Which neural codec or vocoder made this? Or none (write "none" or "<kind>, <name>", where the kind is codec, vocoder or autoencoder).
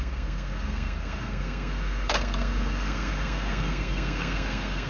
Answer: codec, SNAC